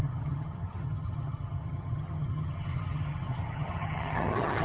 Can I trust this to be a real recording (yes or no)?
no